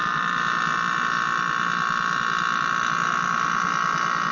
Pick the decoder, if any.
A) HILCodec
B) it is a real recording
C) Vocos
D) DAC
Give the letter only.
B